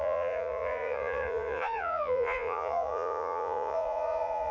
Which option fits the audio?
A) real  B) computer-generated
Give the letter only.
B